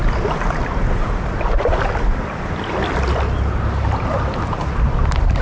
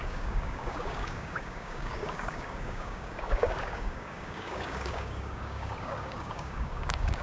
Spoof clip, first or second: second